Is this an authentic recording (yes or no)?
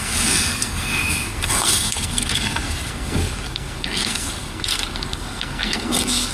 no